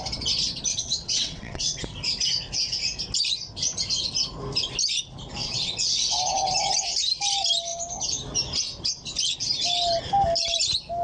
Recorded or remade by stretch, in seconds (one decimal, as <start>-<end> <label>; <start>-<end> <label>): 0.0-0.7 recorded; 0.7-1.8 remade; 1.8-5.4 recorded; 5.4-6.2 remade; 6.2-11.0 recorded